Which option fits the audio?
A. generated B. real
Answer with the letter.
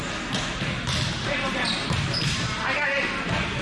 A